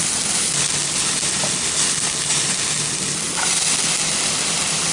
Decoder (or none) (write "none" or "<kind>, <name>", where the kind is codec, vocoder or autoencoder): none